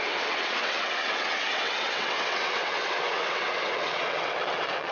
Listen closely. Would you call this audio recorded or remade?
remade